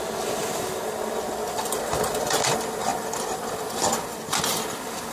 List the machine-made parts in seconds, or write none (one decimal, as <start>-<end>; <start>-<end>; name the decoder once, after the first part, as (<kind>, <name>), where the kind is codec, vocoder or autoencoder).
0.0-5.1 (vocoder, BigVGAN v2)